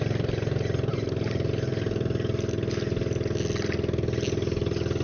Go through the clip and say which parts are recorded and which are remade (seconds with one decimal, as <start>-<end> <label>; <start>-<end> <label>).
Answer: 0.0-5.0 recorded